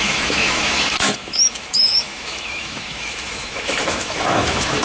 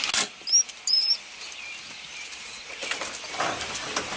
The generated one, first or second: first